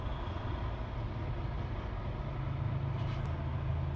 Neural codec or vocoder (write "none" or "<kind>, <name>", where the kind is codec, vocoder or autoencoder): none